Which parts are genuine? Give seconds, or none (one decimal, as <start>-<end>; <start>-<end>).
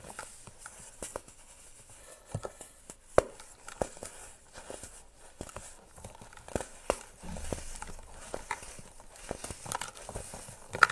0.0-2.0; 2.8-10.9